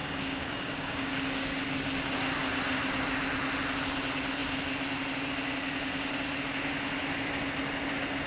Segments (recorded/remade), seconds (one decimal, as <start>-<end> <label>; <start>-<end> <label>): 0.0-1.5 remade; 1.5-8.3 recorded